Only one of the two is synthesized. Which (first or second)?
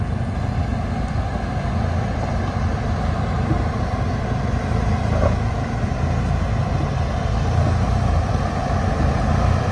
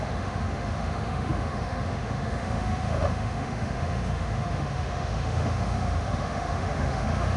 second